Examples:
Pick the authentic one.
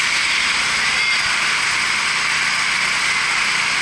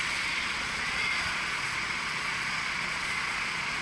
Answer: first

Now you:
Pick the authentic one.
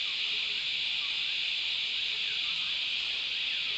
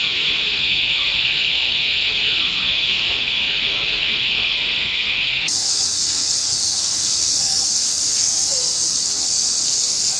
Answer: first